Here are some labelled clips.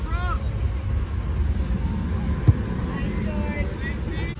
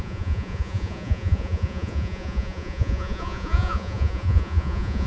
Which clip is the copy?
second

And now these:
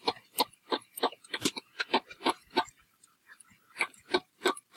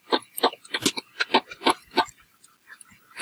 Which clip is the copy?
first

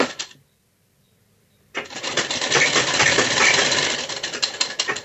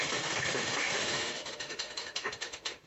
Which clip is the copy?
second